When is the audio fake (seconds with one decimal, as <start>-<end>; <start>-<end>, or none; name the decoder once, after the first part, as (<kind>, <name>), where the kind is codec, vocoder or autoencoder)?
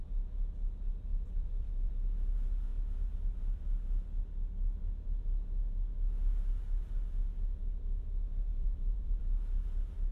1.1-1.9 (vocoder, BigVGAN v2); 8.5-9.2